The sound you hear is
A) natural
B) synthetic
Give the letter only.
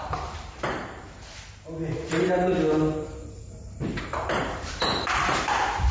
B